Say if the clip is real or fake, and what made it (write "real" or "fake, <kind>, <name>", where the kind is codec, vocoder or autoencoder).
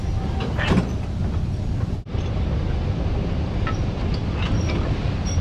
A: real